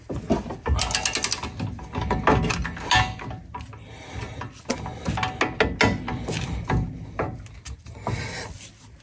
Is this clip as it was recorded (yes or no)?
yes